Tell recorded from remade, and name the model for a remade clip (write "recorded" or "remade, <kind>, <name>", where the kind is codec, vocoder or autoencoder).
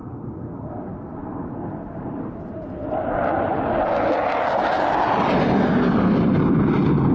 recorded